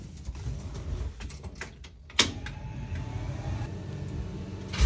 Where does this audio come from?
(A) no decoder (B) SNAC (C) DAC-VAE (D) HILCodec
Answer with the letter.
A